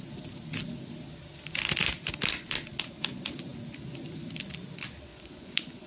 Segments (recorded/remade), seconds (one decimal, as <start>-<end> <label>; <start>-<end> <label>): 0.0-5.1 recorded; 5.1-5.9 remade